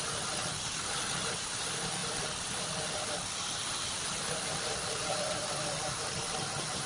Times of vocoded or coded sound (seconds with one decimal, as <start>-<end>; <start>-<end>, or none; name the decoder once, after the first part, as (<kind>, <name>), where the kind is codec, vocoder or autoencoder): 2.0-5.9 (vocoder, BigVGAN v2)